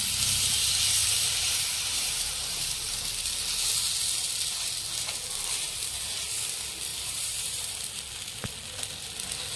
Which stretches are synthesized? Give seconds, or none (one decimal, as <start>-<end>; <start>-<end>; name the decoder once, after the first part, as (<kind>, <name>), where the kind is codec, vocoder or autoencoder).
1.0-3.0 (vocoder, BigVGAN v2); 6.9-7.7